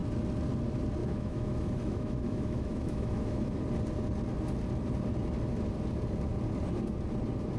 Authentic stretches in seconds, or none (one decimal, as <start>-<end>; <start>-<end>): 0.0-1.0; 3.6-7.6